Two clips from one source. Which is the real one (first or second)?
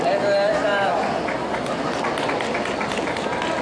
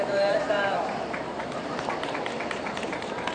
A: first